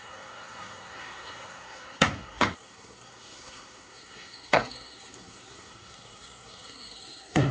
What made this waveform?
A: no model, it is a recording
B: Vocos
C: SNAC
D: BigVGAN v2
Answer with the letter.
C